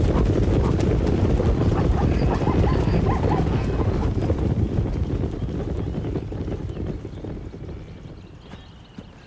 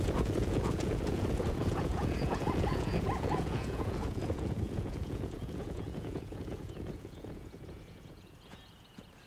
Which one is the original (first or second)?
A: first